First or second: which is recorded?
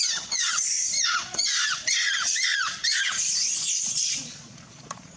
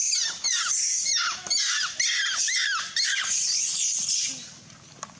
second